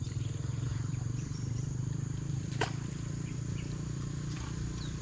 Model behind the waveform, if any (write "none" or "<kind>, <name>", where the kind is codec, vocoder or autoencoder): vocoder, BigVGAN v2